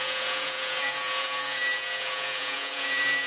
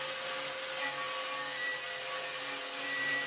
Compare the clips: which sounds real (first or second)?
second